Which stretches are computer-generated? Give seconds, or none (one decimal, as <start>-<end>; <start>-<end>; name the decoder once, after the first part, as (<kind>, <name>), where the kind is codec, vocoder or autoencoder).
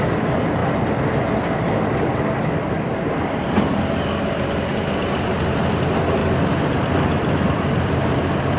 6.2-8.6 (vocoder, BigVGAN v2)